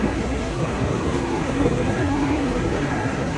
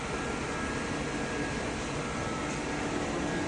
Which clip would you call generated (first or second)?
first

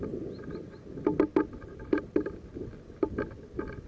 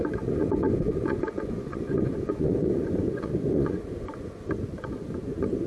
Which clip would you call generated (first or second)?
second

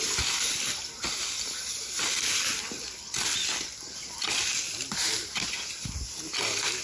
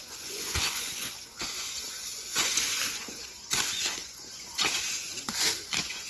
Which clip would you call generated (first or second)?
second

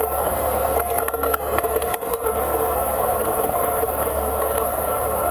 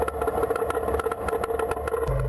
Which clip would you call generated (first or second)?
first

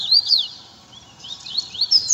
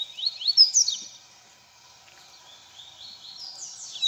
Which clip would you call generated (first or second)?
first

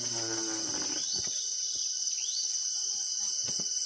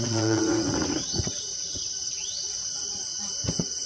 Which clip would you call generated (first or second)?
second